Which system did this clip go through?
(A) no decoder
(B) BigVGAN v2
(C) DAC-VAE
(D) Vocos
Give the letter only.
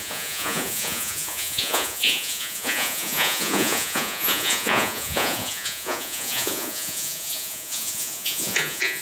D